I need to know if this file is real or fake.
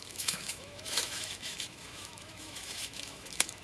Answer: fake